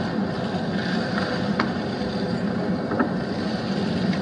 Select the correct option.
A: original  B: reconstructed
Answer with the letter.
A